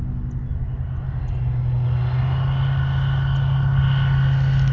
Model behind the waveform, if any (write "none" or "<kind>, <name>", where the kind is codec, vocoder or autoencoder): none